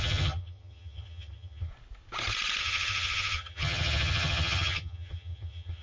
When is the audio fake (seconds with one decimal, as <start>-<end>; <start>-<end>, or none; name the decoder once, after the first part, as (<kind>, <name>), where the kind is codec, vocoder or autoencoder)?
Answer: 0.0-1.7 (vocoder, HiFi-GAN); 2.6-5.8